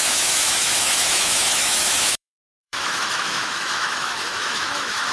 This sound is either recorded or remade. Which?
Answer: remade